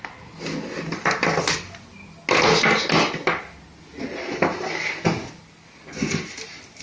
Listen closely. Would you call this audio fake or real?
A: real